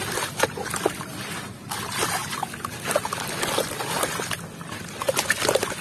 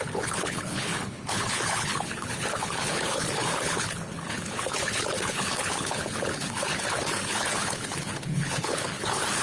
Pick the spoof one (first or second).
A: second